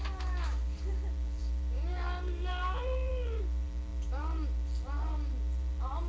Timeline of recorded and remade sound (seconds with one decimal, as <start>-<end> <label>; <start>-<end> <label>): 0.0-6.1 remade